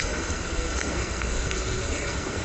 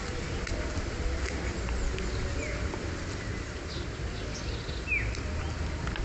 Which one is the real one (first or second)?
second